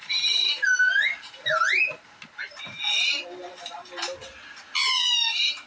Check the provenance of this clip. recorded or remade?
recorded